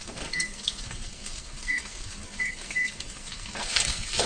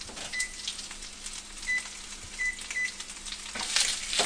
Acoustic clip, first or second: second